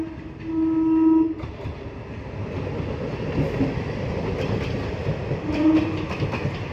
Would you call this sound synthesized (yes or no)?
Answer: no